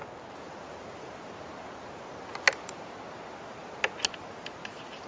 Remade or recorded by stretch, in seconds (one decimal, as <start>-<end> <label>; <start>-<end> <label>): 0.0-5.1 recorded